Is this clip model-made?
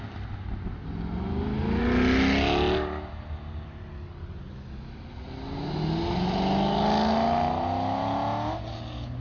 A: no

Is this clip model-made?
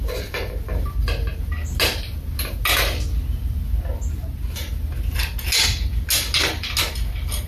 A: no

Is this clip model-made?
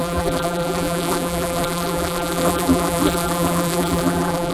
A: yes